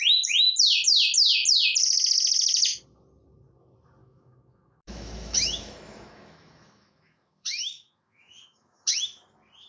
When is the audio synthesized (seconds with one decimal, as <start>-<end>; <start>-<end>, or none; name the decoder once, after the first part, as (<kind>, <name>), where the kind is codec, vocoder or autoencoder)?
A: 4.0-9.0 (autoencoder, DAC-VAE)